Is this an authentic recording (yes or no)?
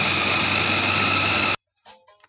yes